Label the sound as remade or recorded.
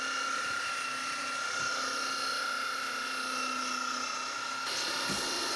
recorded